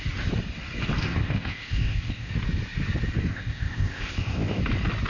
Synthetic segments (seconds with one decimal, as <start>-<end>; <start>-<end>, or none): 1.0-2.3; 3.3-4.6